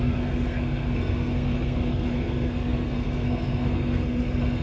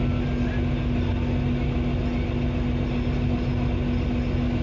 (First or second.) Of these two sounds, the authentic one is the second